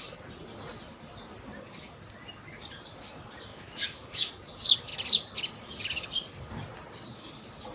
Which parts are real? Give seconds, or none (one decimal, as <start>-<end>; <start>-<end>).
0.0-3.5; 4.3-7.7